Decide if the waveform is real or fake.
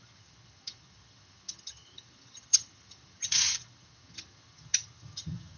fake